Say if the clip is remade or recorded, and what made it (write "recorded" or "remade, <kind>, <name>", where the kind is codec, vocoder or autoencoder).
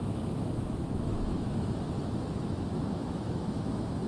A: remade, autoencoder, DAC-VAE